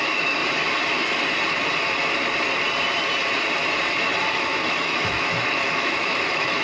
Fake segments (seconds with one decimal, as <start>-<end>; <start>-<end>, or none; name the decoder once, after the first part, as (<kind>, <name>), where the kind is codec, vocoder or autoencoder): 0.0-0.4 (autoencoder, DAC-VAE); 4.3-6.6